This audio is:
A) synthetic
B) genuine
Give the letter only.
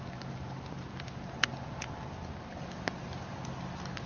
B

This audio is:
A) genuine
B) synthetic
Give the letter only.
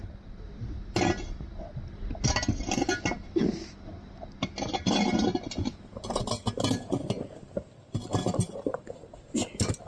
A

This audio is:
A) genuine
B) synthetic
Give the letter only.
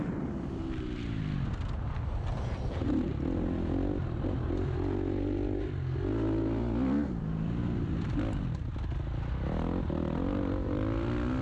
A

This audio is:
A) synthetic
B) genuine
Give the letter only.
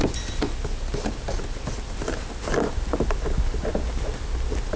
B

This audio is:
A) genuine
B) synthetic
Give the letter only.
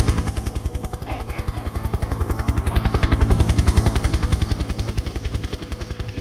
B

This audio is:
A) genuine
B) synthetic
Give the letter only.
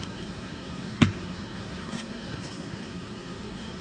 B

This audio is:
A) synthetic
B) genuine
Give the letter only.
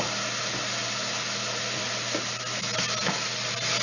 B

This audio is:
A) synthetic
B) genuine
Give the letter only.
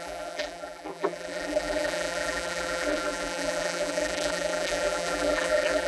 A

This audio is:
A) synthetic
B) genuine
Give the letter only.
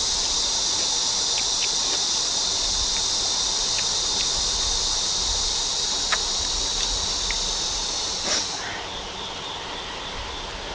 B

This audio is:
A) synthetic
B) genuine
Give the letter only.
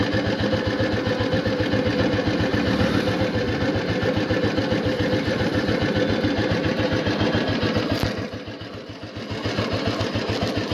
B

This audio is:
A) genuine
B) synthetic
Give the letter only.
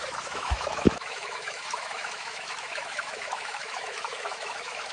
B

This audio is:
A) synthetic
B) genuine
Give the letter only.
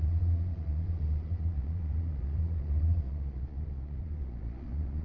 A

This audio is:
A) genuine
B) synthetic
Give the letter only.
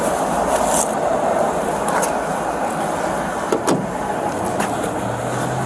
A